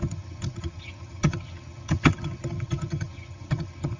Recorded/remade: remade